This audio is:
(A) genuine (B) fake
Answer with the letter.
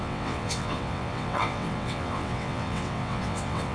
B